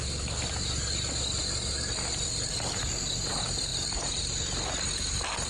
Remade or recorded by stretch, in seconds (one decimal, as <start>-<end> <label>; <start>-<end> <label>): 0.0-5.5 recorded